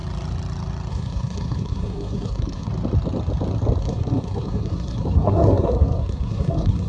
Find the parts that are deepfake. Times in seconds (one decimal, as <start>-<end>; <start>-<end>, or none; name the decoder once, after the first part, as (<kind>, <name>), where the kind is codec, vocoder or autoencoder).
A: 0.9-2.7 (codec, SNAC); 3.8-6.9